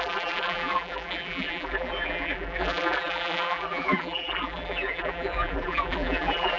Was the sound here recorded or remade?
remade